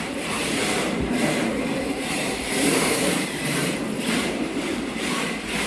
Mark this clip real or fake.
fake